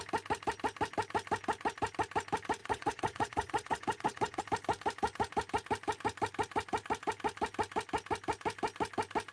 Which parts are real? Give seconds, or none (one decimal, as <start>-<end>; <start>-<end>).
0.0-2.6; 4.4-9.3